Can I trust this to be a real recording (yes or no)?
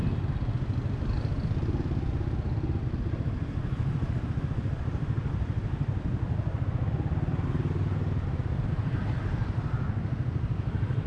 yes